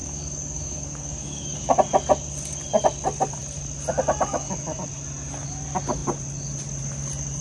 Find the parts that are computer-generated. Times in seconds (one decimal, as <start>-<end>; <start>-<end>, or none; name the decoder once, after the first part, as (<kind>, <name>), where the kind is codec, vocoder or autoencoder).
0.0-1.6 (codec, DAC)

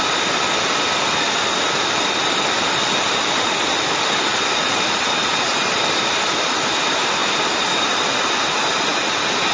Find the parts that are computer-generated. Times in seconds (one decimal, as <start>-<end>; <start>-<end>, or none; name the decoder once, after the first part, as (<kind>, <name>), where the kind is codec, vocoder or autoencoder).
none